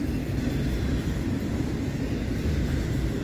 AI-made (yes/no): no